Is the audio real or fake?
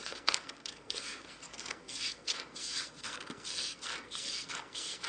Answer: fake